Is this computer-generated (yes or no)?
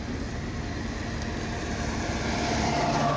no